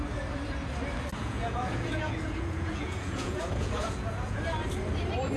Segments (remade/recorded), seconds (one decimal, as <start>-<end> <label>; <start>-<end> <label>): 0.0-1.2 recorded; 1.2-4.4 remade; 4.4-5.4 recorded